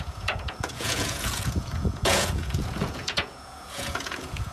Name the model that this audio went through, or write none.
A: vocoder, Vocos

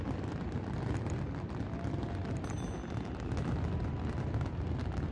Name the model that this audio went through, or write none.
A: none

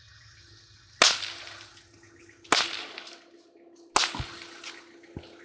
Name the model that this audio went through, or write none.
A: none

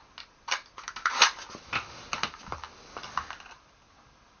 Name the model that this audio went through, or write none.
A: none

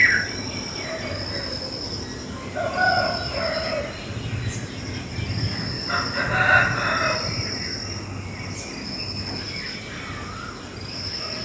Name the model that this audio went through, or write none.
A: none